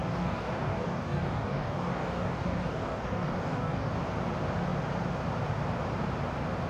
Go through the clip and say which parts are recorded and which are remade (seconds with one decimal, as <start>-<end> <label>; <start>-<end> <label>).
0.0-4.0 remade; 4.0-6.7 recorded